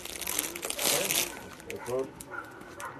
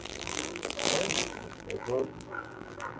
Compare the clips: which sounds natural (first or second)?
first